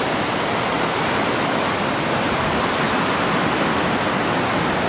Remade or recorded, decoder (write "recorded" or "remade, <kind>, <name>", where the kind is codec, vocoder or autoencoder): recorded